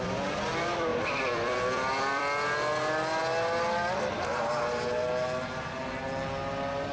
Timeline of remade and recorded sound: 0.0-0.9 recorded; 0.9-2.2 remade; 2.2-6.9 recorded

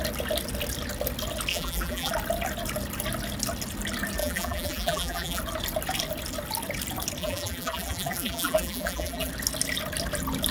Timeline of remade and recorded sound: 0.0-1.5 recorded; 1.5-2.1 remade; 2.1-4.2 recorded; 4.2-5.4 remade; 5.4-7.2 recorded; 7.2-9.3 remade; 9.3-10.5 recorded